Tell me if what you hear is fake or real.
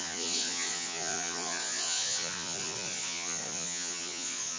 fake